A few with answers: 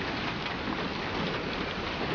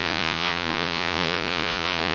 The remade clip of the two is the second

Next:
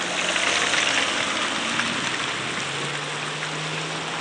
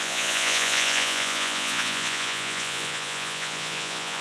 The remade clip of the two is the second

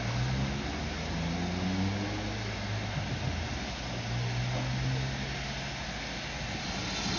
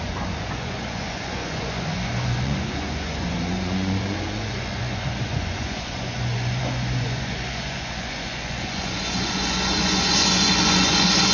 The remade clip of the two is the second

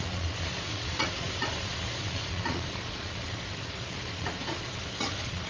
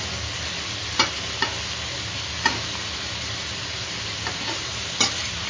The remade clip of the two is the first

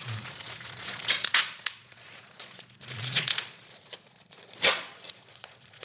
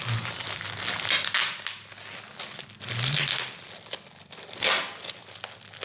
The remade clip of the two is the first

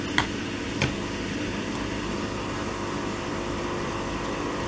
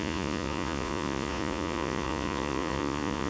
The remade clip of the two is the second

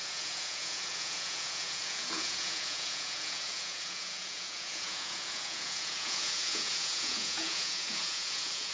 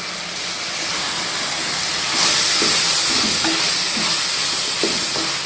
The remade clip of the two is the first